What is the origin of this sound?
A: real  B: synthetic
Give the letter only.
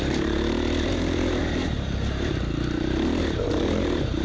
B